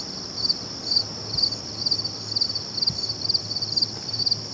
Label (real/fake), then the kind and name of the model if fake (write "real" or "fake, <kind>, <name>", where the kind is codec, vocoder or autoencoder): real